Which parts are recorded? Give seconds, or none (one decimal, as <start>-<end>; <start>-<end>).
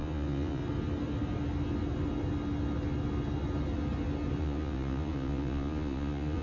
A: 0.6-4.4